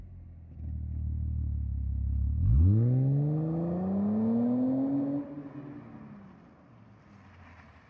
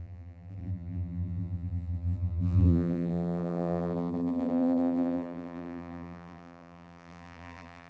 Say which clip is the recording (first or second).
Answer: first